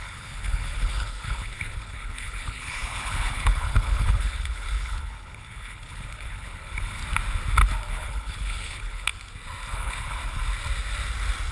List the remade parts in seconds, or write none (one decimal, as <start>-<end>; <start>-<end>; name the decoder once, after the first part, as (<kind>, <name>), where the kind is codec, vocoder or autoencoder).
0.0-7.0 (codec, HILCodec); 7.9-9.1; 9.7-10.2